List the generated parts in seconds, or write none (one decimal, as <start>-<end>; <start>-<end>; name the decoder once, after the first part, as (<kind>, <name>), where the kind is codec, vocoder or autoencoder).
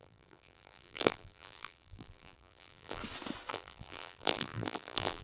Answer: 0.0-3.0 (vocoder, BigVGAN v2); 3.5-5.2